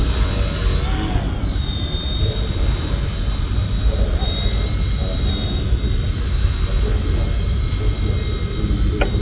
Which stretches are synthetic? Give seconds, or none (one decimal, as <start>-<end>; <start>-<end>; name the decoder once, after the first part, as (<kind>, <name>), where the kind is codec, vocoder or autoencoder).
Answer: none